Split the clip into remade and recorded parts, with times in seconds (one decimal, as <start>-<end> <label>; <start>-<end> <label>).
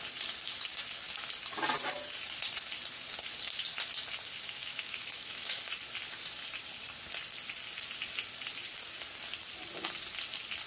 0.0-4.6 recorded; 4.6-5.6 remade; 5.6-10.7 recorded